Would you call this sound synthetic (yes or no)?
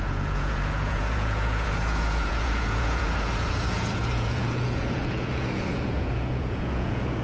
yes